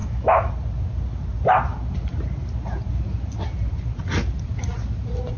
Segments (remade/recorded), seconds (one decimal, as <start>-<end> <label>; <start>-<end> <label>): 0.0-0.5 remade; 0.5-5.4 recorded

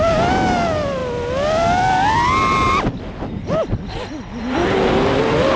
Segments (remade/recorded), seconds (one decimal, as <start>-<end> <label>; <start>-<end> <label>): 0.0-5.6 recorded

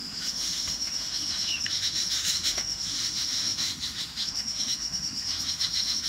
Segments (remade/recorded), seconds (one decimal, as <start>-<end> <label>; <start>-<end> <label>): 0.0-6.1 remade

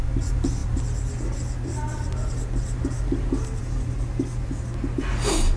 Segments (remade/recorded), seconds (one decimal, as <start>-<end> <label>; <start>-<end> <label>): 0.0-5.6 recorded

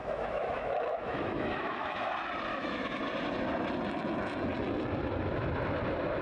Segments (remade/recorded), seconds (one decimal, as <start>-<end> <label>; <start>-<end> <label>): 0.0-2.1 remade; 2.1-2.5 recorded; 2.5-3.0 remade; 3.0-6.2 recorded

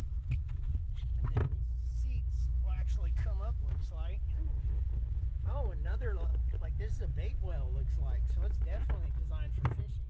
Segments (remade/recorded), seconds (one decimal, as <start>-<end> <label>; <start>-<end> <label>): 0.0-0.5 remade; 0.5-2.3 recorded; 2.3-3.8 remade; 3.8-5.1 recorded; 5.1-6.3 remade; 6.3-10.1 recorded